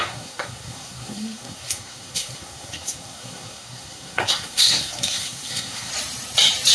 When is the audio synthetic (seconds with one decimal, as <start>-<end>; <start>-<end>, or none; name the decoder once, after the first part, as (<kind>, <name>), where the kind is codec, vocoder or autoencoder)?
0.0-5.9 (codec, SNAC)